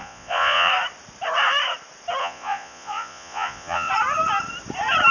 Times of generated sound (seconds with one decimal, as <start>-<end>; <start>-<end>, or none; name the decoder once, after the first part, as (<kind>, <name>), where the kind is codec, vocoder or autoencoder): 0.0-0.7 (vocoder, Vocos); 2.2-3.9